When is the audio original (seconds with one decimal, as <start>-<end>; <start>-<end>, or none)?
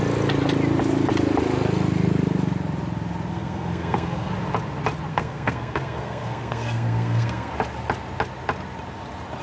0.0-3.3; 4.3-5.1; 7.5-9.4